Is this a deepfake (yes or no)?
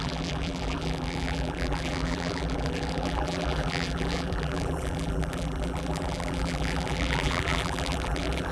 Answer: yes